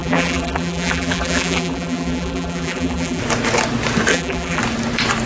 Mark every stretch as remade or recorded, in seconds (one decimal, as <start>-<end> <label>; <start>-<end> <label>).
0.0-3.2 remade; 3.2-4.1 recorded; 4.1-4.6 remade; 4.6-5.3 recorded